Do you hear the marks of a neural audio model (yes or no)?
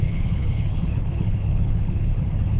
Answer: yes